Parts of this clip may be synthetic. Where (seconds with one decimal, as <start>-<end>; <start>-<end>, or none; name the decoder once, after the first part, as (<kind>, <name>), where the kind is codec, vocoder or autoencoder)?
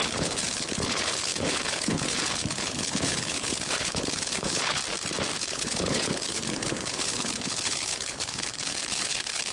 0.0-4.8 (codec, HILCodec); 5.4-9.5